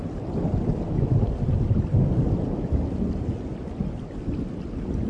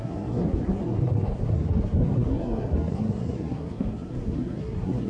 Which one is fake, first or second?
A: second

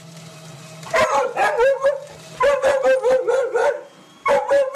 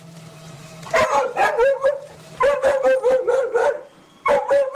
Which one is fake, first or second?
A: second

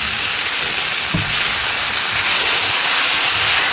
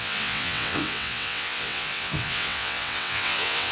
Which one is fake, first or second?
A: second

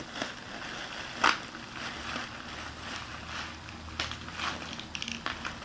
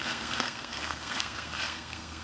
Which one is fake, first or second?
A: second